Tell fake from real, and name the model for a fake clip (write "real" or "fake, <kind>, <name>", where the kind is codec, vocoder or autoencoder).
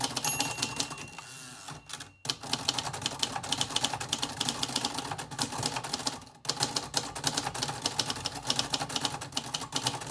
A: real